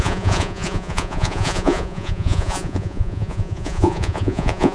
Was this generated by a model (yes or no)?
yes